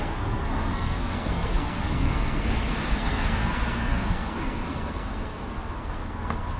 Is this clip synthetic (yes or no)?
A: yes